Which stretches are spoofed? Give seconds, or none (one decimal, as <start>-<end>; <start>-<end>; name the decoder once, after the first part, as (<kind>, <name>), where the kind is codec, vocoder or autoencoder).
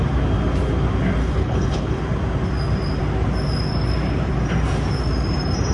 1.2-2.0 (codec, HILCodec)